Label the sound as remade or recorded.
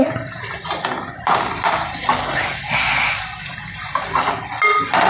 recorded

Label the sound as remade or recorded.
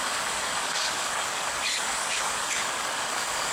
remade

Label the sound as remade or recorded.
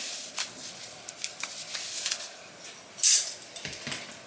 recorded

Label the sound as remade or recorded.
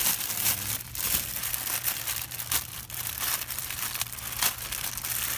recorded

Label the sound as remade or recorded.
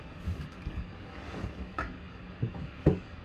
remade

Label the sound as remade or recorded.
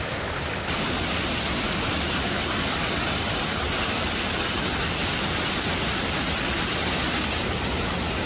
recorded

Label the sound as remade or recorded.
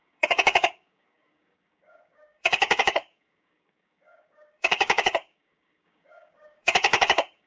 remade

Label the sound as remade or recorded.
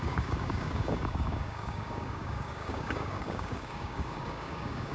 remade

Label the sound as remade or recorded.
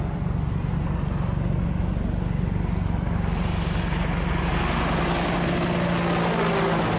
recorded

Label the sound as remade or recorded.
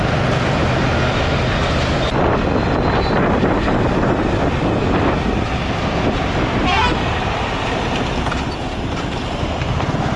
recorded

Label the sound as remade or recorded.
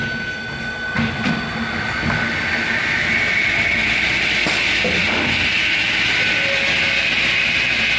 recorded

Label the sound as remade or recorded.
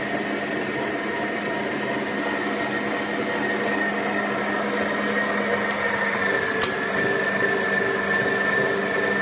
recorded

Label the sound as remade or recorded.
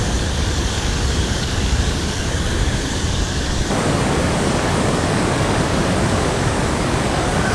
remade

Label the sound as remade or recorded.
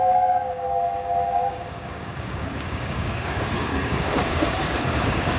remade